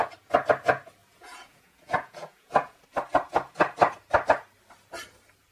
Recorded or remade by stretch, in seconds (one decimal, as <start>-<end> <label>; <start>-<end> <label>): 0.0-1.0 recorded; 1.0-2.8 remade; 2.8-5.5 recorded